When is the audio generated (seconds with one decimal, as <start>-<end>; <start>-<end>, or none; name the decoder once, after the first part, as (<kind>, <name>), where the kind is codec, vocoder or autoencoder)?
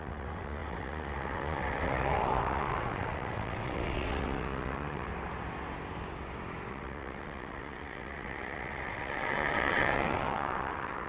0.0-5.1 (vocoder, WaveNeXt); 6.7-11.1